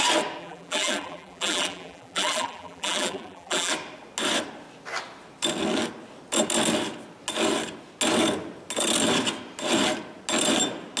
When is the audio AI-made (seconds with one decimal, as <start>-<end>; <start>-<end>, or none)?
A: 0.4-3.7